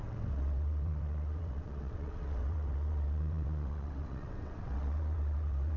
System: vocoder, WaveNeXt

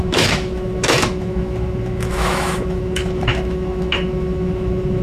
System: autoencoder, DAC-VAE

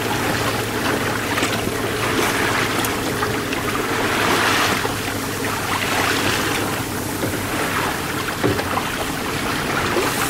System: none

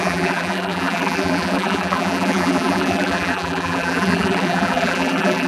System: vocoder, BigVGAN v2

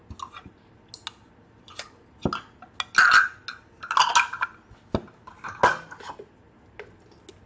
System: none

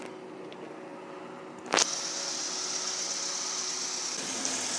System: none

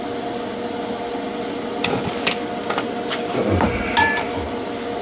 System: none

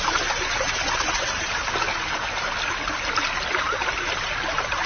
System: none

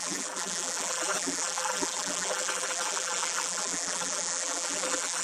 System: vocoder, BigVGAN v2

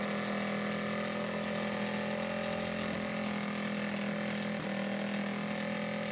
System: none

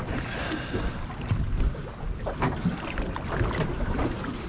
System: none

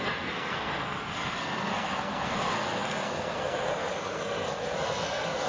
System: codec, SNAC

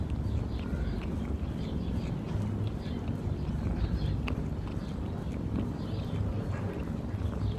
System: none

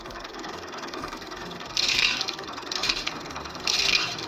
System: codec, SNAC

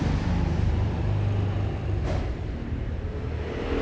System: none